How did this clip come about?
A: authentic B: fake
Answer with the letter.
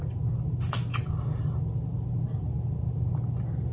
A